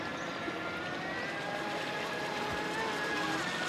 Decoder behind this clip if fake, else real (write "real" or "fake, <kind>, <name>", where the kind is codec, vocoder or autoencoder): real